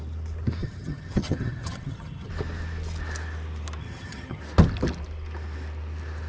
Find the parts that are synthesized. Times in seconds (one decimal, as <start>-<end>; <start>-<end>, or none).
0.6-2.3; 3.8-4.4